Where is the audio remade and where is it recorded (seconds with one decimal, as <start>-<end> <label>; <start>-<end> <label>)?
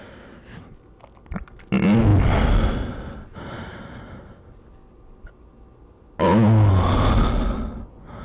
0.0-8.2 recorded